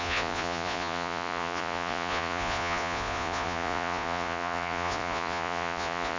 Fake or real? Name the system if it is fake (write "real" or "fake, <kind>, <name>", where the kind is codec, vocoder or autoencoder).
fake, vocoder, Vocos